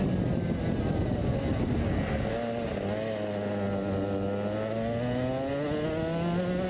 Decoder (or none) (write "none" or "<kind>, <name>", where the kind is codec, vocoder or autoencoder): none